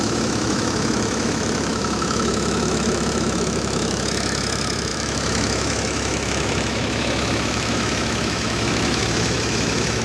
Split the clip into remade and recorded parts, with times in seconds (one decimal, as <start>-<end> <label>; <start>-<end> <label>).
0.0-10.0 remade